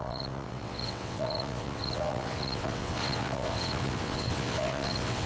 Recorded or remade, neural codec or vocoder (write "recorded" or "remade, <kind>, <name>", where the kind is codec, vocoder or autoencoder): remade, vocoder, WaveNeXt